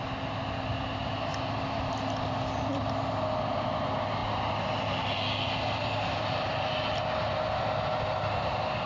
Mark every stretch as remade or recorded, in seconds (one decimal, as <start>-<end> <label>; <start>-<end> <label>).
0.0-8.9 recorded